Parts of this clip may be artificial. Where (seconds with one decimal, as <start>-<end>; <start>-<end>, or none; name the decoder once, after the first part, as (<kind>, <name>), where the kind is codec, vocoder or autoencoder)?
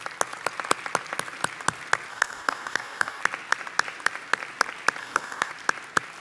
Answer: 2.1-3.2 (codec, DAC); 5.0-5.5